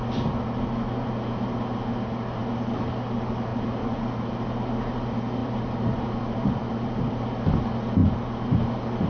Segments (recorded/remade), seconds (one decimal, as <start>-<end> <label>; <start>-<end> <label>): 0.0-3.5 recorded; 3.5-4.0 remade; 4.0-5.4 recorded; 5.4-7.1 remade; 7.1-8.0 recorded; 8.0-8.6 remade; 8.6-9.1 recorded